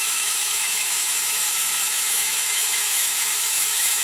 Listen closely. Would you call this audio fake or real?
fake